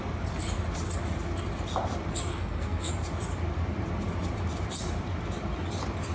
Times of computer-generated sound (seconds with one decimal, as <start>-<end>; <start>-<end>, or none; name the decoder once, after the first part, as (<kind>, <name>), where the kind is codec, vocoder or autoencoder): 2.3-2.9 (codec, SNAC)